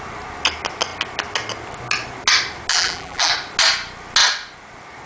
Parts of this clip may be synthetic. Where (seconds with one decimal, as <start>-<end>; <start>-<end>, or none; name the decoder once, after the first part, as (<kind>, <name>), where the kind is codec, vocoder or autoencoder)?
2.7-3.3 (vocoder, BigVGAN v2)